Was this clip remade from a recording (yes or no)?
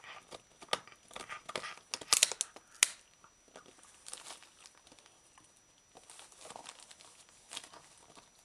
no